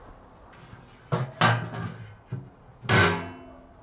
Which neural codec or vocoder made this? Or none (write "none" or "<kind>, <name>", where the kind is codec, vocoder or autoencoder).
none